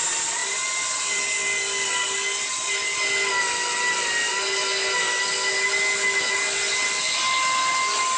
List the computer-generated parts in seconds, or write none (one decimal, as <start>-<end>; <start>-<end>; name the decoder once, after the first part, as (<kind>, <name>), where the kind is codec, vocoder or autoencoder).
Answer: none